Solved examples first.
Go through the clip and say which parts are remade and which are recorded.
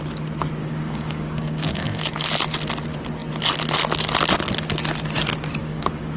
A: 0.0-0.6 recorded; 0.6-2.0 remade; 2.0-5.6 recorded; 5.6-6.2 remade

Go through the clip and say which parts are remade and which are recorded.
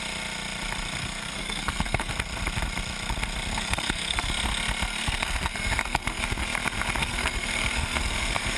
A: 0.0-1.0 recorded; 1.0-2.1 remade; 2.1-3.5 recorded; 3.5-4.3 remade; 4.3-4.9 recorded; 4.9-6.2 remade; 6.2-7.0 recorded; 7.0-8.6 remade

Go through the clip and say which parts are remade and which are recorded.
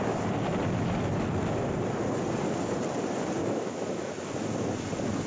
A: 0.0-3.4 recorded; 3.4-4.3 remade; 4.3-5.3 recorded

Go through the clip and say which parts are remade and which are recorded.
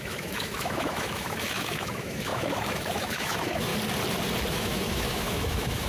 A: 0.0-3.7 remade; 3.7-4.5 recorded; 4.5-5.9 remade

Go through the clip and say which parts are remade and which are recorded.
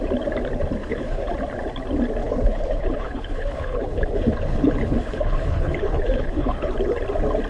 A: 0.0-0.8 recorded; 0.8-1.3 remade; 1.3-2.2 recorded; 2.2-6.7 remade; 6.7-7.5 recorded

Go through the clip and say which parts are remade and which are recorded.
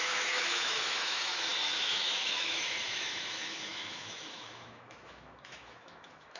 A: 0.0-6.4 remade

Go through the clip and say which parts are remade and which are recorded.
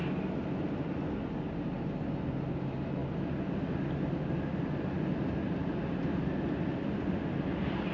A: 0.0-7.9 recorded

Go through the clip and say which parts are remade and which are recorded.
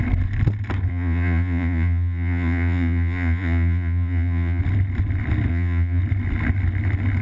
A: 0.0-0.9 recorded; 0.9-4.6 remade; 4.6-5.5 recorded; 5.5-6.0 remade; 6.0-7.2 recorded